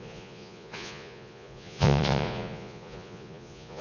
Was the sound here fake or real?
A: fake